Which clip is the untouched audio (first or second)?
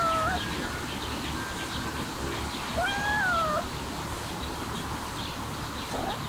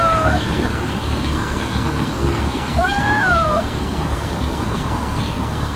first